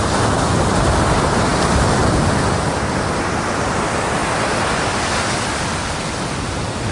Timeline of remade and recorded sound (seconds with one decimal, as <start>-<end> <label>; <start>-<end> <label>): 0.0-6.9 recorded